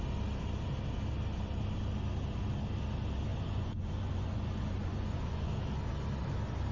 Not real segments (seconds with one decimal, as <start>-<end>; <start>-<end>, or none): 3.3-5.5